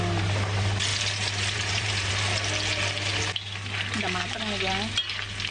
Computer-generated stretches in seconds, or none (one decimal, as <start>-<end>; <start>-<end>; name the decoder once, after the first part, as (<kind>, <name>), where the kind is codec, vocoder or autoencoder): 0.9-2.1 (vocoder, BigVGAN v2)